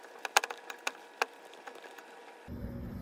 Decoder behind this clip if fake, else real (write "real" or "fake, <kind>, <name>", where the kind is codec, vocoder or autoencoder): real